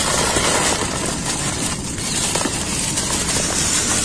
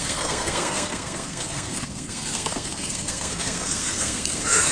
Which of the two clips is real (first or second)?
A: first